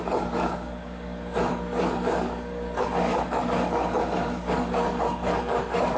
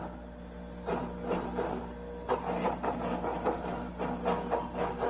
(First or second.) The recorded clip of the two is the second